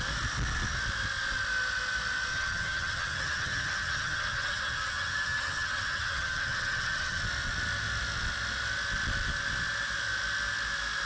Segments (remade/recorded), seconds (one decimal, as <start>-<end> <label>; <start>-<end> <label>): 0.0-2.3 recorded; 2.3-7.2 remade; 7.2-11.1 recorded